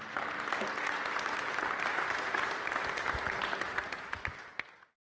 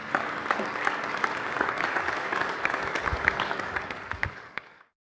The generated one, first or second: second